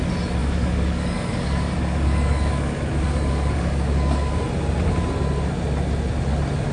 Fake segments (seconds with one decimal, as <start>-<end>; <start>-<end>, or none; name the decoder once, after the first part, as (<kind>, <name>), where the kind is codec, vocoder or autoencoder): 0.4-4.4 (codec, DAC)